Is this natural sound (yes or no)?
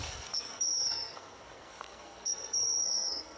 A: no